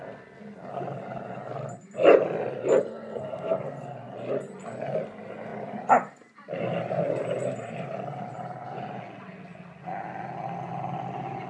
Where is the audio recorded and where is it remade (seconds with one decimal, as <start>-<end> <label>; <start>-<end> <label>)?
0.0-2.9 recorded; 2.9-4.1 remade; 4.1-11.5 recorded